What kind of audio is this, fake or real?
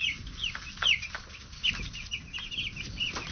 real